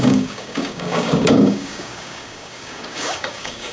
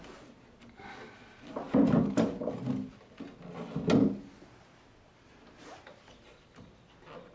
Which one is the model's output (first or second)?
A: first